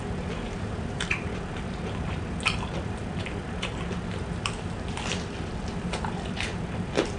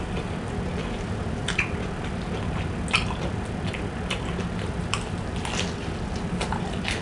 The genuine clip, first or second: second